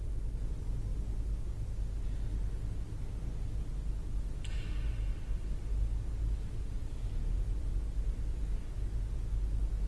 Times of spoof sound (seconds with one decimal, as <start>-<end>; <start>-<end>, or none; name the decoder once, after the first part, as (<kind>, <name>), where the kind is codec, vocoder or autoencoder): none